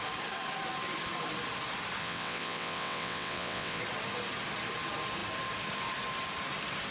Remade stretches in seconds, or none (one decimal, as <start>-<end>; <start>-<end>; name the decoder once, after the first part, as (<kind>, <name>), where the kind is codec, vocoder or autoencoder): 2.0-3.8 (vocoder, WaveNeXt)